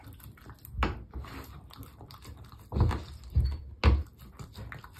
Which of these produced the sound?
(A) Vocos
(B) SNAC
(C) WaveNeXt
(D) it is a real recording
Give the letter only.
D